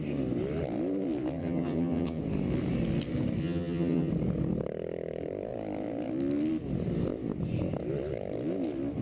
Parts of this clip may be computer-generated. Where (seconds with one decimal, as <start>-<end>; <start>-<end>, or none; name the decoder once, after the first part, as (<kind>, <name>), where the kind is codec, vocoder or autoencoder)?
1.4-2.2 (vocoder, HiFi-GAN); 3.4-4.1